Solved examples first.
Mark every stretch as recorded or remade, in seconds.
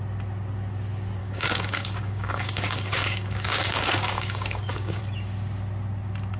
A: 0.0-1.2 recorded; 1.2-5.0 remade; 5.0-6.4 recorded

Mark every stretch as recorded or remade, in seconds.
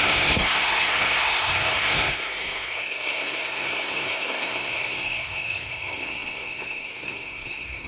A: 0.0-7.9 remade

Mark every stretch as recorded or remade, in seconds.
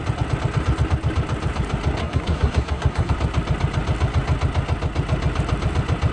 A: 0.0-2.0 recorded; 2.0-3.1 remade; 3.1-6.1 recorded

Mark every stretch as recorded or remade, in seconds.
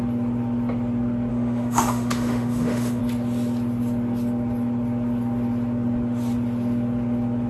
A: 0.0-1.3 recorded; 1.3-3.0 remade; 3.0-7.5 recorded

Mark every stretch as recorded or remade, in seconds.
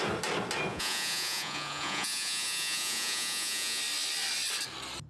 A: 0.0-0.7 recorded; 0.7-3.8 remade; 3.8-5.1 recorded